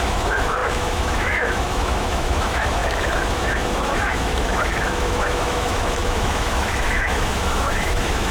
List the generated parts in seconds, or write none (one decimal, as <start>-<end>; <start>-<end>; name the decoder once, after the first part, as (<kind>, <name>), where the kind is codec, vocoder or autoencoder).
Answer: 0.0-8.3 (autoencoder, DAC-VAE)

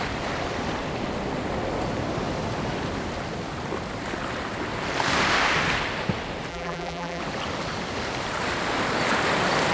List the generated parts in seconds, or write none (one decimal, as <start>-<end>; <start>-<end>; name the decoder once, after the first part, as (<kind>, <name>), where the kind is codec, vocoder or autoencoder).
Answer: 6.5-7.2 (vocoder, BigVGAN v2)